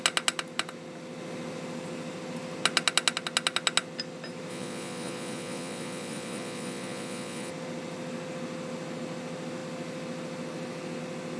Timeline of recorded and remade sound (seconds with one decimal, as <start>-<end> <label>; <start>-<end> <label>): 0.0-4.5 recorded; 4.5-7.5 remade; 7.5-11.4 recorded